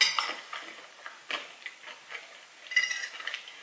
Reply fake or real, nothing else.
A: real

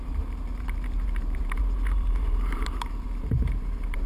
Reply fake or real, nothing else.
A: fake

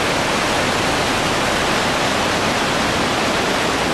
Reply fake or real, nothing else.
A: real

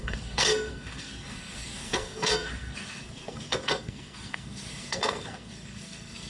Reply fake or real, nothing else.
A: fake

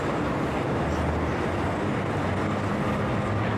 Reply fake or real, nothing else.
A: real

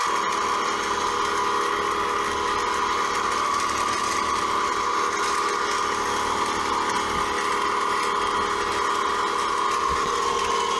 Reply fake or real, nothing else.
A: real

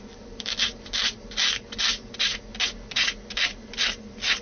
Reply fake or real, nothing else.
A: real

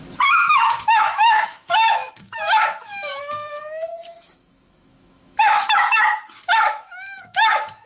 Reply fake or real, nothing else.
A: fake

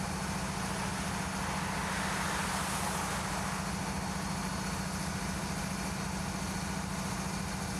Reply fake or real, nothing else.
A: real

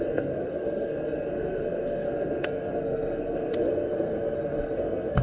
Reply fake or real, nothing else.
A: fake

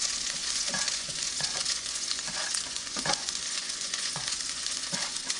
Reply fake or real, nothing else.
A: fake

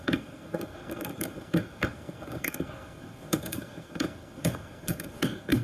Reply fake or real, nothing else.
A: fake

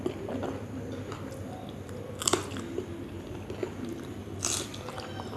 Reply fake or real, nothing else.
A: real